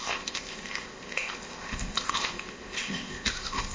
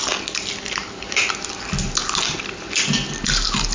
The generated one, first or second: first